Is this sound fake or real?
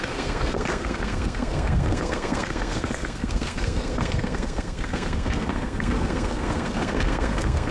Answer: fake